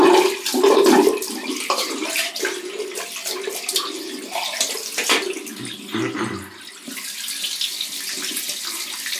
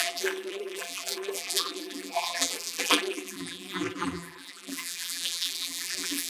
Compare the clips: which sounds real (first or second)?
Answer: first